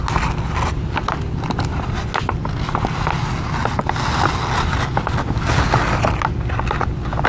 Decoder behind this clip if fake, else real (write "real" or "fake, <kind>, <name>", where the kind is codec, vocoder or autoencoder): real